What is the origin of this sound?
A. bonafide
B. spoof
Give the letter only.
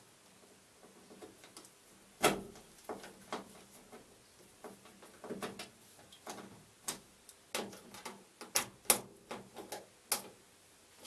A